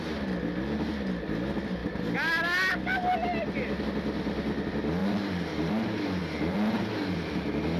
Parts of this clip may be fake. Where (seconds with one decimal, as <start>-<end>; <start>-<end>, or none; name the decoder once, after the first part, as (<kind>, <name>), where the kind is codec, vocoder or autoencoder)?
5.0-5.7 (vocoder, BigVGAN v2); 6.2-7.3